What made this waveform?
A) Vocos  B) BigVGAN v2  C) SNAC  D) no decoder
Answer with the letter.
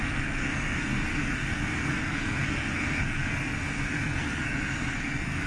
C